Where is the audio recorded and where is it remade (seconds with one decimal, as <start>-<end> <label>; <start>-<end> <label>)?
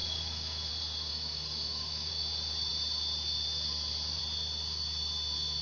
0.0-0.7 remade; 0.7-1.1 recorded; 1.1-2.1 remade; 2.1-5.6 recorded